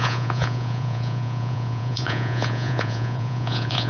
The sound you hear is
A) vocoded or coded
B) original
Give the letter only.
A